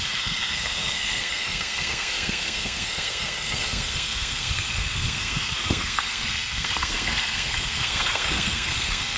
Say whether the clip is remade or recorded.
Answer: remade